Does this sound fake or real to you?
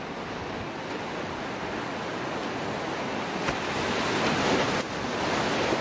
real